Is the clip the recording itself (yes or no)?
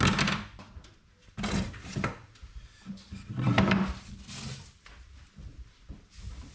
yes